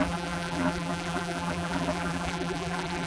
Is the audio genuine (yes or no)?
no